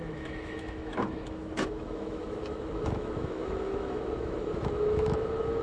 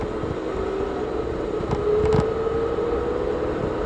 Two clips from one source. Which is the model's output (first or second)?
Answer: first